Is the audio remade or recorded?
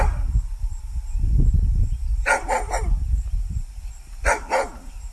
recorded